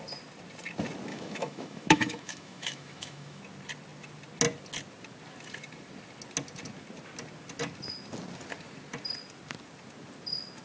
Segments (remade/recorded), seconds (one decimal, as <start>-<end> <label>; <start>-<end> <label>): 0.0-1.1 recorded; 1.1-3.4 remade; 3.4-10.6 recorded